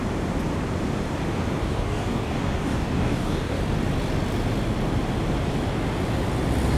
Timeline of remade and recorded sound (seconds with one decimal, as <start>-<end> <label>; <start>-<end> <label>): 0.0-1.6 recorded; 1.6-3.6 remade; 3.6-6.8 recorded